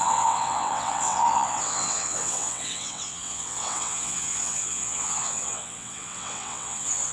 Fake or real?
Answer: fake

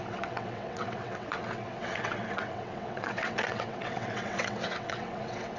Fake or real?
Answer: fake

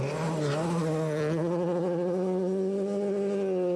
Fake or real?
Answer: real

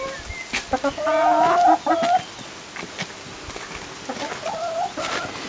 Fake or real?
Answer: real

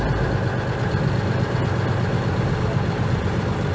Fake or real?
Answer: real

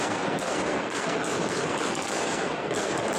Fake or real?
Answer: fake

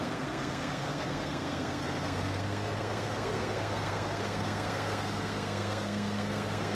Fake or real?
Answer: fake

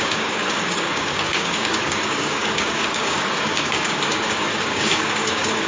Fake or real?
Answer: fake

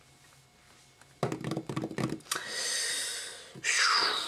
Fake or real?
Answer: real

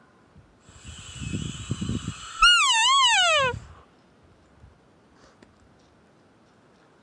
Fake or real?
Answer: real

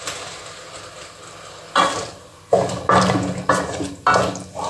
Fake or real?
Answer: real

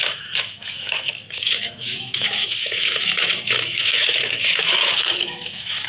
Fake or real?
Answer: fake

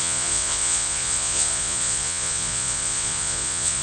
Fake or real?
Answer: fake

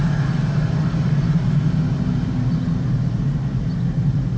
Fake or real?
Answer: real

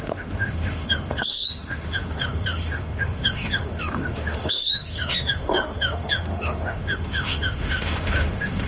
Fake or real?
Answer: fake